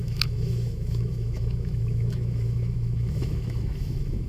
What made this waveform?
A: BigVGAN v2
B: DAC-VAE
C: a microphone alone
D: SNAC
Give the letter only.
B